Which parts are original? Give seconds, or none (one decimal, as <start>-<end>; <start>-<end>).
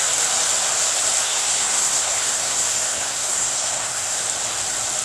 0.0-1.2; 4.2-5.0